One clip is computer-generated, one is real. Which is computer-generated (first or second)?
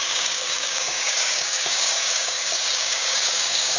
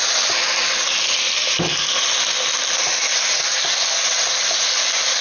first